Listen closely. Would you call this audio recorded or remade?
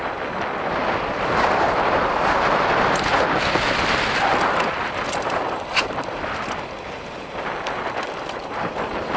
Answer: recorded